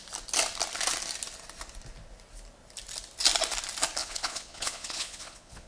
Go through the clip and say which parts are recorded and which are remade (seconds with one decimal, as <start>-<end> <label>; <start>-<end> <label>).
0.0-4.0 recorded; 4.0-5.7 remade